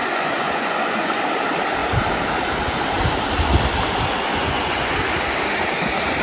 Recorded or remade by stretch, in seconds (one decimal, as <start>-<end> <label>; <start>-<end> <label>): 0.0-1.2 remade; 1.2-4.3 recorded; 4.3-5.0 remade; 5.0-6.2 recorded